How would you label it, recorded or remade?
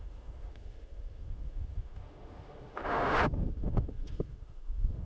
remade